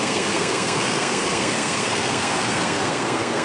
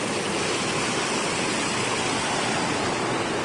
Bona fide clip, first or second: second